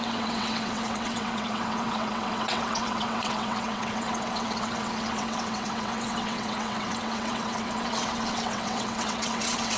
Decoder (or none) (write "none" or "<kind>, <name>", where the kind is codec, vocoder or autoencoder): vocoder, WaveNeXt